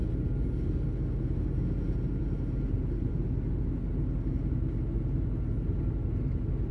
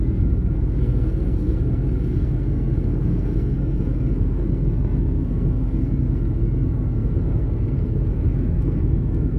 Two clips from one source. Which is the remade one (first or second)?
second